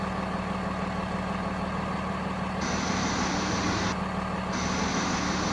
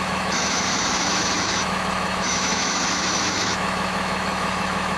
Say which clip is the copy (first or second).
second